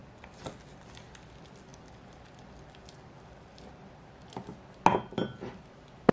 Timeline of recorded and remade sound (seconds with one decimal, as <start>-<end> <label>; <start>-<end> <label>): 0.0-1.0 remade; 1.0-1.7 recorded; 1.7-4.1 remade; 4.1-6.1 recorded